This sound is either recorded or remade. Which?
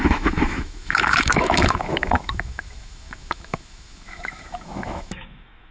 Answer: remade